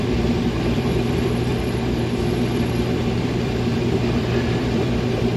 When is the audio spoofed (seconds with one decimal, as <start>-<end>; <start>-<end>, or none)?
0.0-1.5; 3.2-5.4